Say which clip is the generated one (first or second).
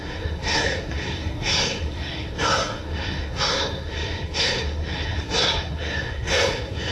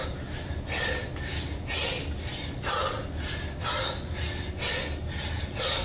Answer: first